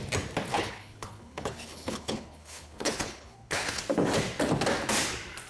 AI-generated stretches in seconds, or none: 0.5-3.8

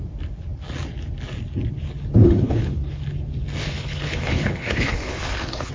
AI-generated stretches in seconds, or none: 2.2-3.0; 3.6-5.7

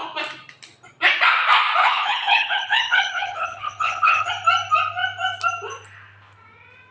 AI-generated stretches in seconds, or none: 1.8-4.3

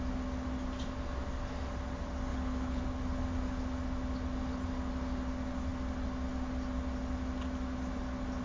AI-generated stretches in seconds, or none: 2.3-2.8

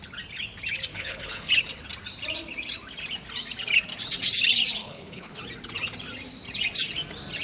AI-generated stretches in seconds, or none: 0.9-1.5; 4.8-5.4

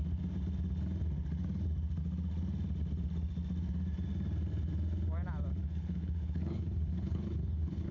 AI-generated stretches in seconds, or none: 5.6-7.9

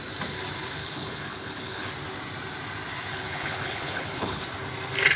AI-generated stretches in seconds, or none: 0.8-1.9; 3.1-4.4

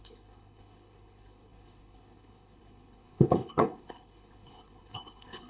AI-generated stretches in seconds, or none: 0.0-5.5